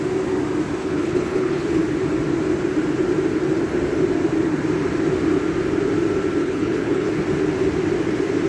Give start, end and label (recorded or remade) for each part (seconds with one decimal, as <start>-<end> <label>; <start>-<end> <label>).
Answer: 0.0-0.8 recorded; 0.8-1.8 remade; 1.8-6.4 recorded; 6.4-7.1 remade; 7.1-8.5 recorded